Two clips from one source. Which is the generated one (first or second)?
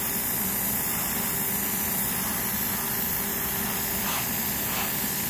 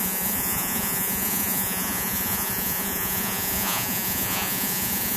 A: second